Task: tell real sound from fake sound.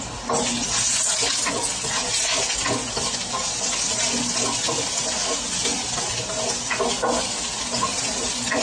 real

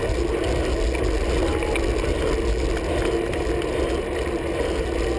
real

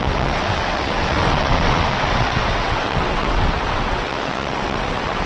fake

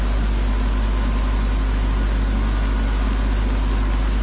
real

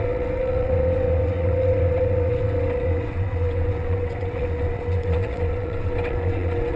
fake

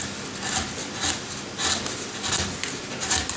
real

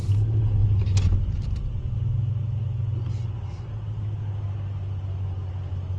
real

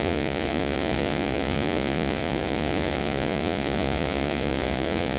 fake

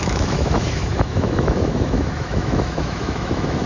fake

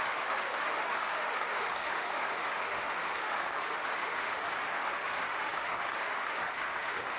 fake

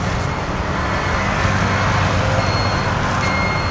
real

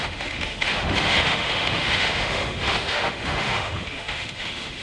fake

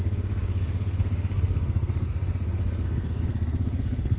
fake